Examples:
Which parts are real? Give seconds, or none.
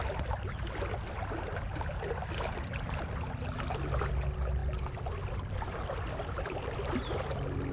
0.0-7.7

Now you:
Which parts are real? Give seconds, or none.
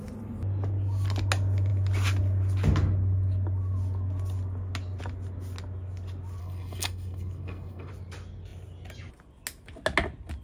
0.0-6.4; 7.9-10.4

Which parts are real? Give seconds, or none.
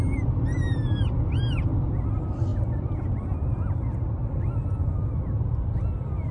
0.0-6.3